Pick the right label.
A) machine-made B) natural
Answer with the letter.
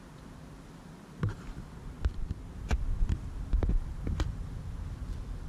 B